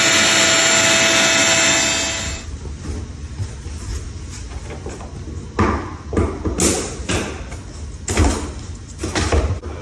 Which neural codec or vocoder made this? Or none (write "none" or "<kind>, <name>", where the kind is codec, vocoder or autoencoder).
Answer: none